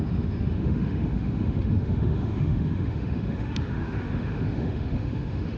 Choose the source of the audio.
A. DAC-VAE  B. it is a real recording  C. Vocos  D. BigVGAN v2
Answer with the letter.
A